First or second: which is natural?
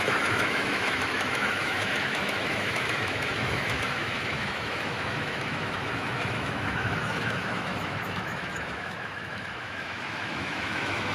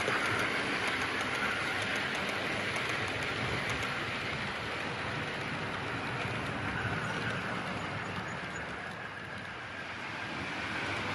second